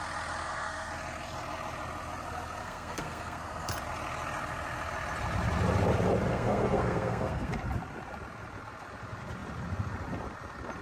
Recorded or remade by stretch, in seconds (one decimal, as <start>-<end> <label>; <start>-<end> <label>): 0.0-0.4 recorded; 0.4-0.9 remade; 0.9-2.6 recorded; 2.6-3.7 remade; 3.7-6.3 recorded; 6.3-7.5 remade; 7.5-10.8 recorded